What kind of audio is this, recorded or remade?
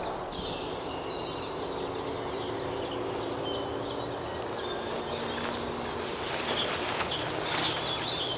recorded